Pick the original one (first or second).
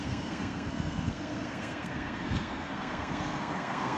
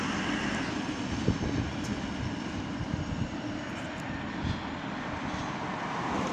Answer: second